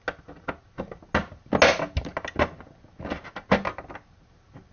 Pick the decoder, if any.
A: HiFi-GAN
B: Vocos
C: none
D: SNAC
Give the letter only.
C